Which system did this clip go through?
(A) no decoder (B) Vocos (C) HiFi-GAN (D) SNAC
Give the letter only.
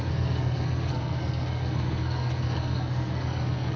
D